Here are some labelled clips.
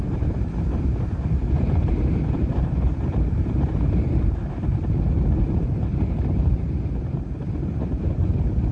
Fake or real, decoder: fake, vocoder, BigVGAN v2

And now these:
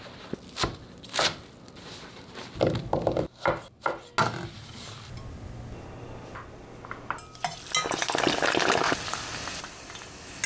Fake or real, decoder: real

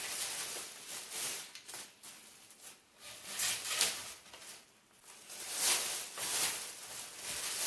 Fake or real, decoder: real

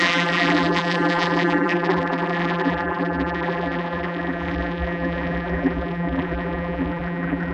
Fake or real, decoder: fake, vocoder, BigVGAN v2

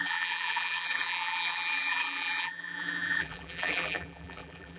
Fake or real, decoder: fake, vocoder, BigVGAN v2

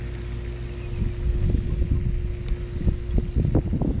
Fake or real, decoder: real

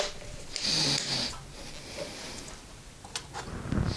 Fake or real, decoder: real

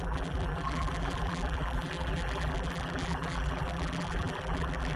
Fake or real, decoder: fake, vocoder, BigVGAN v2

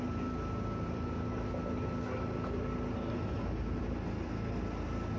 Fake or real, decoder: real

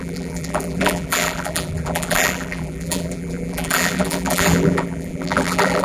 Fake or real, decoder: fake, vocoder, BigVGAN v2